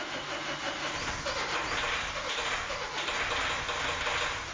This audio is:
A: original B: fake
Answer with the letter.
A